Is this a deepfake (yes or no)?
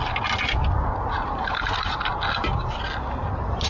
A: no